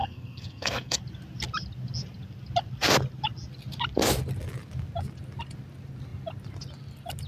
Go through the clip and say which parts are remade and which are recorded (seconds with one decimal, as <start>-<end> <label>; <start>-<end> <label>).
0.0-1.0 remade; 1.0-7.3 recorded